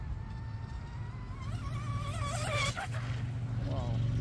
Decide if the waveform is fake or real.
real